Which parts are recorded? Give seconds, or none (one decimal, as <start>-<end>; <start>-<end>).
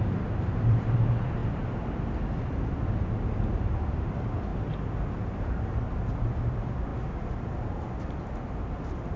1.4-3.9; 4.5-5.2; 6.9-8.6